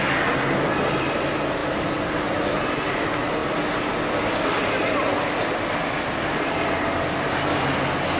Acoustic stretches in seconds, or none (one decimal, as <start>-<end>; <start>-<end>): 0.0-8.2